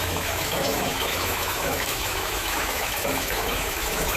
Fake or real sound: fake